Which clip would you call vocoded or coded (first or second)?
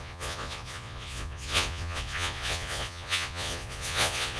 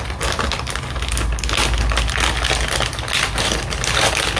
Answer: first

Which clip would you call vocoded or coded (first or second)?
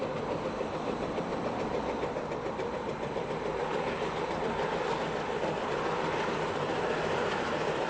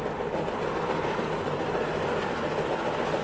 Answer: first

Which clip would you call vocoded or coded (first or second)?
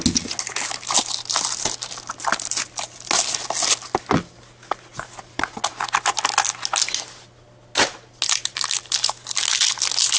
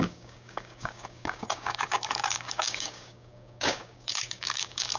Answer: second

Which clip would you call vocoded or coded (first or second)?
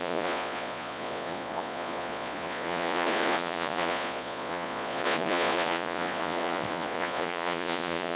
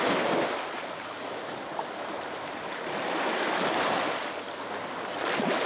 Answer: first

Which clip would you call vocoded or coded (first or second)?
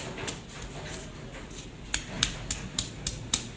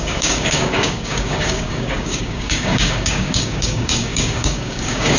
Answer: second